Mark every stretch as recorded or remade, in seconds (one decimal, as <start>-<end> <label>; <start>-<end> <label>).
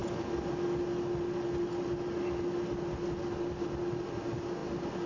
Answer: 0.0-5.1 recorded